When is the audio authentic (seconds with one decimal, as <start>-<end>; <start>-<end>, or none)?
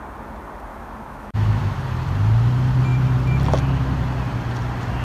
0.0-0.7; 1.6-5.0